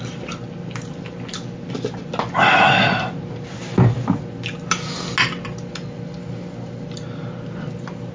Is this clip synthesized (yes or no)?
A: no